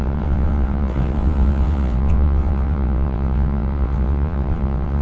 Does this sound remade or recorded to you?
remade